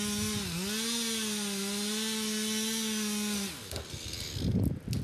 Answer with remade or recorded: recorded